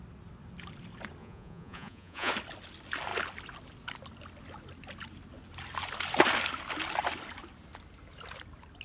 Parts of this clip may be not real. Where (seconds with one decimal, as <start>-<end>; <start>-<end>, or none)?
1.2-2.3